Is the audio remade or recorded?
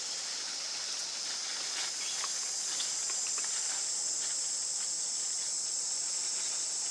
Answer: recorded